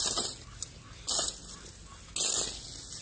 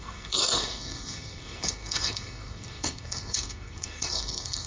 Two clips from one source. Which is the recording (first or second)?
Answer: first